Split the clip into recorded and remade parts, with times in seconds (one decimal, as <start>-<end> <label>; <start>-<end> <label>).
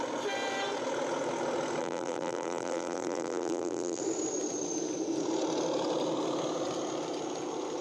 0.0-1.8 recorded; 1.8-4.0 remade; 4.0-7.8 recorded